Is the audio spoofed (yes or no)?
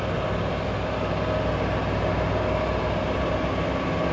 no